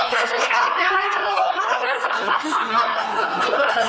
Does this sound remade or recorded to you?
remade